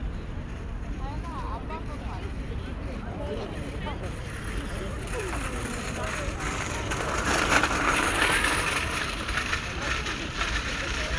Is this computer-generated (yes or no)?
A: yes